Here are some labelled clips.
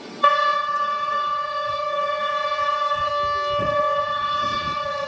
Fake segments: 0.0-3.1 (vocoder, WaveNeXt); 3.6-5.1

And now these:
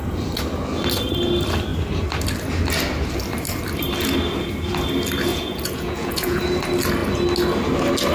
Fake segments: 5.3-6.4 (vocoder, Vocos)